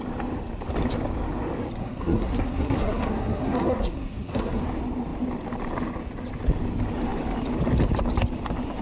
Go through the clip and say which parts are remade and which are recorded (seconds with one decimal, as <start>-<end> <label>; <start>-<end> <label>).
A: 0.0-1.8 recorded; 1.8-4.6 remade; 4.6-8.8 recorded